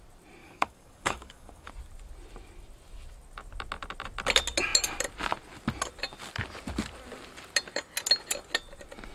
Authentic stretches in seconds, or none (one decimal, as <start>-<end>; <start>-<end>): 0.0-0.4; 1.7-9.1